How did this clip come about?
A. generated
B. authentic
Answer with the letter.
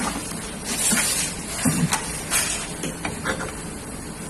A